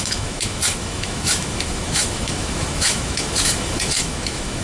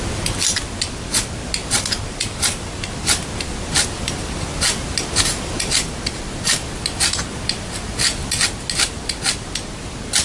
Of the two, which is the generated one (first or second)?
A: first